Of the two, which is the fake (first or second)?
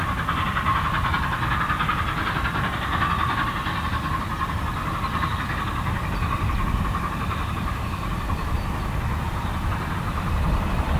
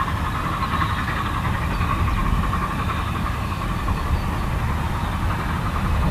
first